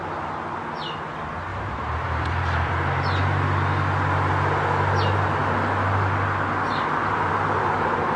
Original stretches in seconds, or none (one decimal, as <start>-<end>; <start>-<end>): 0.0-1.5; 3.0-8.2